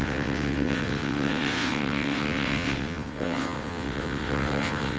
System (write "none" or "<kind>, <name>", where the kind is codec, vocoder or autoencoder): vocoder, WaveNeXt